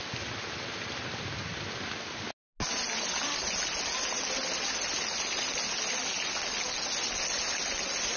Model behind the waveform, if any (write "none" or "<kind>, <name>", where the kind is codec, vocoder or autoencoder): none